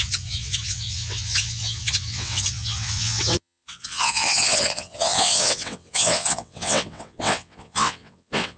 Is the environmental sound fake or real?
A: fake